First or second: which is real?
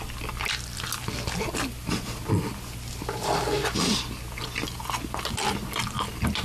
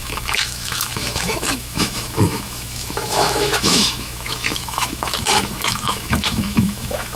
first